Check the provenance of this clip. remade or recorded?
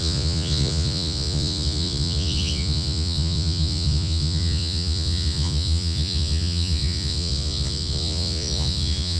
remade